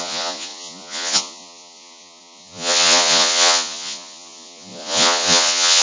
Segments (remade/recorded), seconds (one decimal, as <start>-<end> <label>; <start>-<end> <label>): 0.0-5.8 remade

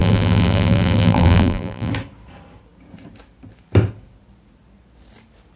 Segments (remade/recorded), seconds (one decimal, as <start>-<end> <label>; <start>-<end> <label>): 0.0-1.9 remade; 1.9-5.6 recorded

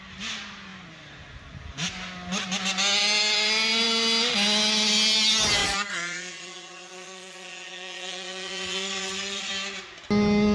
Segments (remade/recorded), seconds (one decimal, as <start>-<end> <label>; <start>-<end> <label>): 0.0-5.6 recorded; 5.6-9.5 remade; 9.5-10.5 recorded

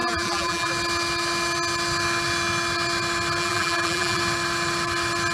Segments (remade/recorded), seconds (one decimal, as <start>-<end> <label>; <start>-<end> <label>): 0.0-0.7 remade; 0.7-3.4 recorded; 3.4-4.2 remade; 4.2-5.3 recorded

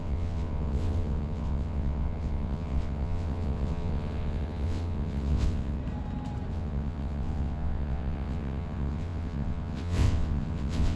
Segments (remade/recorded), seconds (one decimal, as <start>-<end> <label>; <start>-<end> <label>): 0.0-5.8 remade; 5.8-6.5 recorded; 6.5-11.0 remade